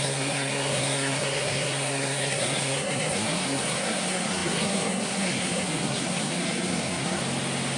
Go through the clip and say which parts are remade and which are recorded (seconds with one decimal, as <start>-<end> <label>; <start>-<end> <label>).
0.0-7.2 remade; 7.2-7.8 recorded